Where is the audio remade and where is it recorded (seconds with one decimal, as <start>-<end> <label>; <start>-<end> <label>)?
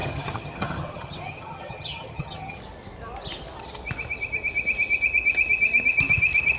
0.0-2.6 remade; 2.6-6.6 recorded